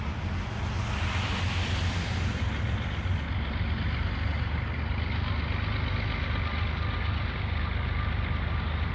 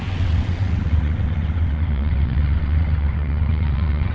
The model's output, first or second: second